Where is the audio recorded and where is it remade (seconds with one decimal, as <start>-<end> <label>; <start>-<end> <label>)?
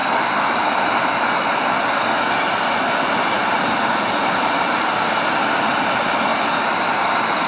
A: 0.0-0.7 remade; 0.7-6.3 recorded; 6.3-7.1 remade; 7.1-7.5 recorded